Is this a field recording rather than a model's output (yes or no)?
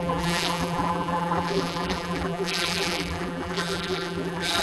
no